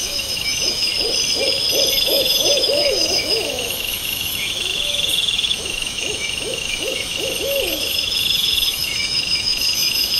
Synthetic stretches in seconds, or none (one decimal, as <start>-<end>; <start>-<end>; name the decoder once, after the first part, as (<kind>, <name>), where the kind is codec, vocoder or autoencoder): 0.0-0.9 (autoencoder, DAC-VAE); 2.0-10.2